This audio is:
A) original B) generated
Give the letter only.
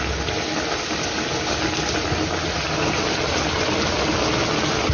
A